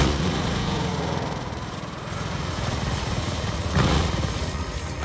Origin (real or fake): fake